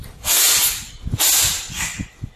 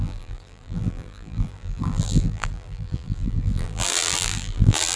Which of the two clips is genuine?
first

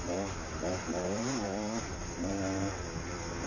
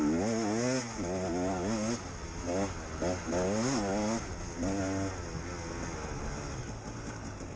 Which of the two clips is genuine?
second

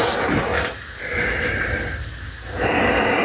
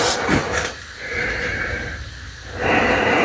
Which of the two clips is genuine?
first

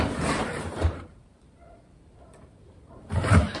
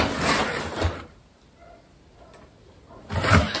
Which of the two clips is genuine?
second